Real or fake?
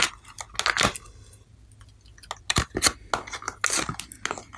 real